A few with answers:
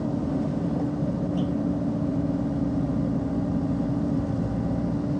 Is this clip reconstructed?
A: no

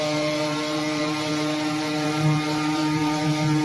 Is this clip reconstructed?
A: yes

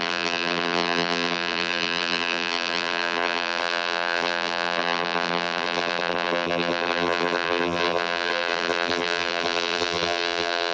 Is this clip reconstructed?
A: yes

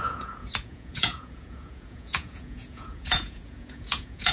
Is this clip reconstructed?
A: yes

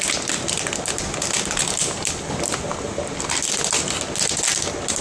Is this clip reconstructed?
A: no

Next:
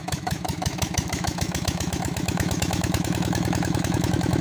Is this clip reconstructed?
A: yes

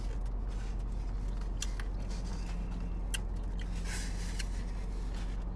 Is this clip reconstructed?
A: no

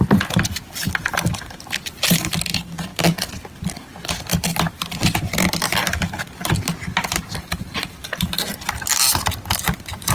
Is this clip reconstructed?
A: no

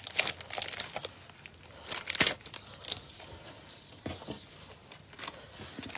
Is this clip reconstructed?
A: no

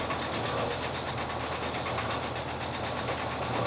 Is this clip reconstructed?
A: no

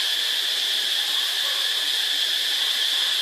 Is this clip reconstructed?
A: no